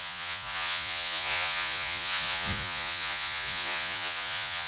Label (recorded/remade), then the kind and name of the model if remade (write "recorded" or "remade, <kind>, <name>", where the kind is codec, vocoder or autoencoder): remade, vocoder, Vocos